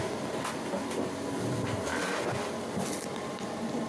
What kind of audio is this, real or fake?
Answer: real